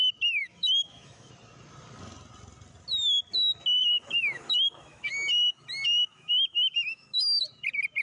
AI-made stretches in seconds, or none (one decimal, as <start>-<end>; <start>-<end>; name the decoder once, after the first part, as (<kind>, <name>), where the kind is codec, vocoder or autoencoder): 0.4-1.3 (autoencoder, DAC-VAE); 3.8-7.5